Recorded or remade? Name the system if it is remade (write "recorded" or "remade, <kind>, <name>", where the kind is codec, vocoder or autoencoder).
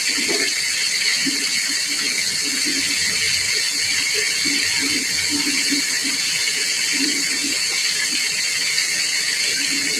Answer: recorded